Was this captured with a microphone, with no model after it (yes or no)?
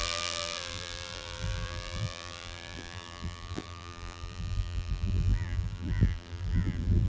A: no